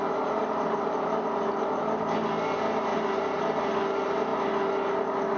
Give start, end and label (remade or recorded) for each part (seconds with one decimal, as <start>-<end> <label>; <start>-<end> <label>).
0.0-0.4 recorded; 0.4-1.4 remade; 1.4-2.9 recorded; 2.9-3.6 remade; 3.6-5.4 recorded